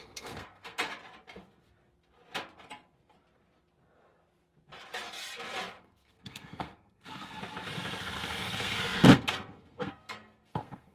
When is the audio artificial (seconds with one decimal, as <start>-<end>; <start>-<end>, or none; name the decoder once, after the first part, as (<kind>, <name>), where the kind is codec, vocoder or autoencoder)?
0.0-0.9 (codec, SNAC); 5.8-7.4; 8.0-10.9